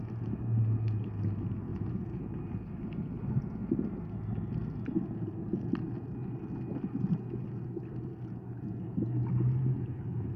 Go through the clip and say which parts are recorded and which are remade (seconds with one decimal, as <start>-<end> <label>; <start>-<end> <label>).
0.0-1.7 recorded; 1.7-2.2 remade; 2.2-10.4 recorded